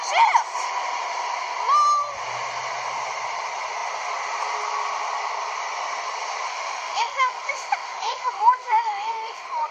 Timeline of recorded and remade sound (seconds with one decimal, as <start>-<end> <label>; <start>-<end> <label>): 0.0-6.5 recorded; 6.5-9.7 remade